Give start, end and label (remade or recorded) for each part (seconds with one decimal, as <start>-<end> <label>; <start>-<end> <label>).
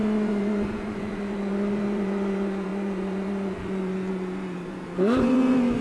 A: 0.0-5.8 remade